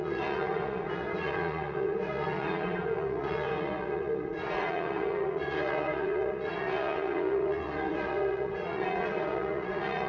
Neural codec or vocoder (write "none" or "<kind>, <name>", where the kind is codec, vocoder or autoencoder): vocoder, Vocos